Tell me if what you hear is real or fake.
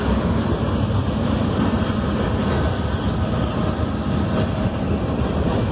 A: real